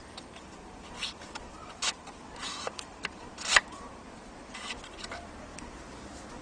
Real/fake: fake